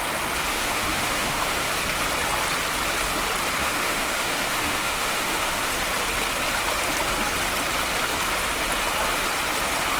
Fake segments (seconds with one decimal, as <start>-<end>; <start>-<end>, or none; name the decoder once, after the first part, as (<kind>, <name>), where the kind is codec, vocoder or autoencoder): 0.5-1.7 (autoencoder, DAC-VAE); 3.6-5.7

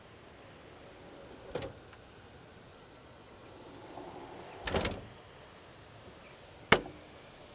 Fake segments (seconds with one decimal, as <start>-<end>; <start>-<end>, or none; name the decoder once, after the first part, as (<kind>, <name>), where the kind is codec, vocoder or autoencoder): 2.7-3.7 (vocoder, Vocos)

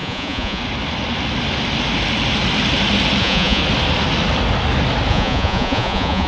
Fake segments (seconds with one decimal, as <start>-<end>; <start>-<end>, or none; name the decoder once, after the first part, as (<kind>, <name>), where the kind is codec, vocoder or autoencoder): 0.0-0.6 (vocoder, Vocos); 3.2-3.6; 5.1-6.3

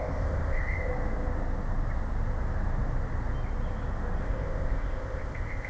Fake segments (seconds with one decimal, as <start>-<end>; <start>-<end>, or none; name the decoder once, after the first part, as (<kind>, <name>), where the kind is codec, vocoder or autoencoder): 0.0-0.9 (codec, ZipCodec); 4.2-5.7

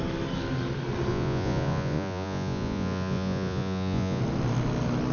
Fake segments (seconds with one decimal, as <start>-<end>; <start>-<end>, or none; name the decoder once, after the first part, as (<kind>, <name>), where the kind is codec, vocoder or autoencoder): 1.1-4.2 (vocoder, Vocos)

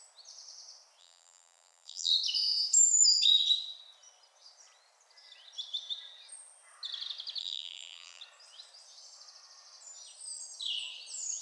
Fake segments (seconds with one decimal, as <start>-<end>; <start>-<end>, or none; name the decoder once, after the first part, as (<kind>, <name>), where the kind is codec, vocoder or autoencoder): 1.0-2.1 (vocoder, BigVGAN v2); 7.4-8.2

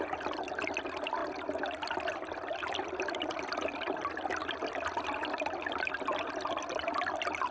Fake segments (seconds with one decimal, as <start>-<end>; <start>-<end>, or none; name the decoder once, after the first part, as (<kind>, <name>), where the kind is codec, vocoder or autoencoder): none